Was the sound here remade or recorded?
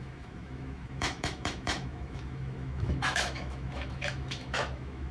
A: remade